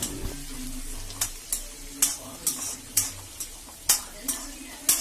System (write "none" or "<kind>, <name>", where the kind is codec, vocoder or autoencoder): none